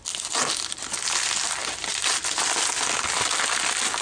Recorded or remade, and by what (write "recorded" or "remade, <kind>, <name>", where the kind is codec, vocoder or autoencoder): recorded